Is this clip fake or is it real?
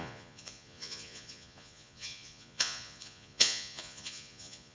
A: fake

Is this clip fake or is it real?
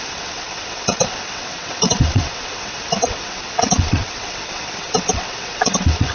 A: fake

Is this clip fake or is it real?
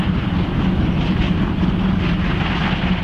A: real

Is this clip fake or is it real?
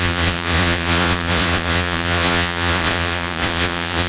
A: fake